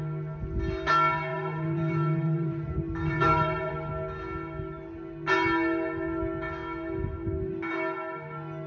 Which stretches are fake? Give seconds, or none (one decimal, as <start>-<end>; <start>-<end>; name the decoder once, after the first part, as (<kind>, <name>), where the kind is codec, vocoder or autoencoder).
1.3-3.7 (vocoder, BigVGAN v2)